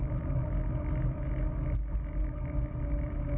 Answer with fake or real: real